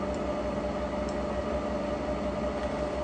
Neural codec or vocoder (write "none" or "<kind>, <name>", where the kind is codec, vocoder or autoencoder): none